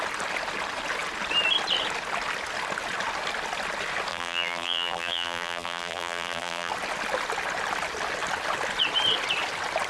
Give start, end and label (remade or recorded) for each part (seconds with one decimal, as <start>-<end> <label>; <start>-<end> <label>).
0.0-4.1 recorded; 4.1-6.7 remade; 6.7-9.9 recorded